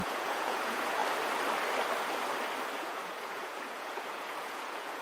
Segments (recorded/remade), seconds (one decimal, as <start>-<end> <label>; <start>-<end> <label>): 0.0-1.0 remade; 1.0-2.8 recorded; 2.8-5.0 remade